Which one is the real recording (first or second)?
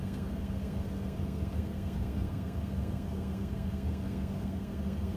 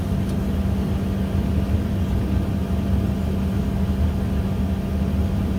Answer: second